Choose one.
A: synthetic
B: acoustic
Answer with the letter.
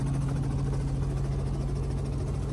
B